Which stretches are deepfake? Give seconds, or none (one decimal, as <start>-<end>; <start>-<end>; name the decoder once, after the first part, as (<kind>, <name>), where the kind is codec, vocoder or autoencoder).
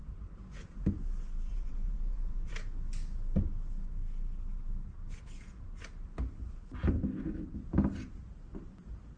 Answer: 1.5-2.5 (vocoder, Vocos)